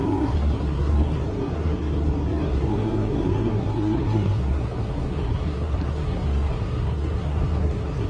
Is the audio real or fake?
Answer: fake